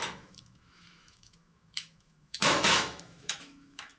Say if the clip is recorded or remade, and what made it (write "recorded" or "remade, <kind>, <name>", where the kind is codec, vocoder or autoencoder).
remade, autoencoder, DAC-VAE